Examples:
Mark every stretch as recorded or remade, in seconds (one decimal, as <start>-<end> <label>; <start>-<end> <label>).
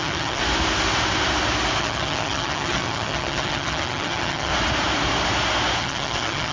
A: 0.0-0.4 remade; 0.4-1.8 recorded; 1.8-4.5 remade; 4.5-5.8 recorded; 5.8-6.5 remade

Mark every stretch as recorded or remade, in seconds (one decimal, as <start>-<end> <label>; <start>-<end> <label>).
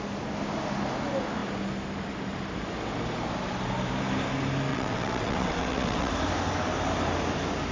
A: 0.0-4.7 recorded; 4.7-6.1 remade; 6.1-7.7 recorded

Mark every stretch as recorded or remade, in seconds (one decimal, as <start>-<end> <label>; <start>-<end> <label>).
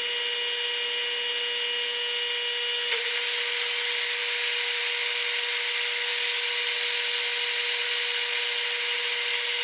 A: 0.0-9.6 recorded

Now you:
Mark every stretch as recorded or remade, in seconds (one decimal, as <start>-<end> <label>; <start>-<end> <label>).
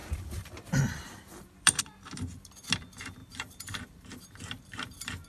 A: 0.0-1.8 remade; 1.8-3.2 recorded; 3.2-5.3 remade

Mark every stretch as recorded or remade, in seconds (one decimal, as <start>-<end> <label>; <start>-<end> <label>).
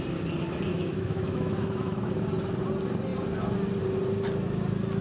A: 0.0-0.7 recorded; 0.7-2.1 remade; 2.1-5.0 recorded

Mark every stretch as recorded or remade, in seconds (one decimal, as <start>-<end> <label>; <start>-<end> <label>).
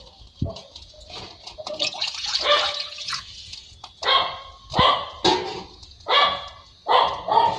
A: 0.0-0.6 recorded; 0.6-4.3 remade; 4.3-5.5 recorded; 5.5-7.0 remade; 7.0-7.6 recorded